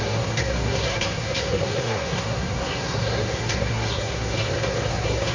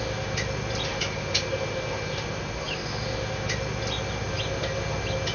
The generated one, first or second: first